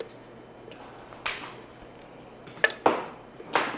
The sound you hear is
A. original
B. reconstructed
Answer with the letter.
A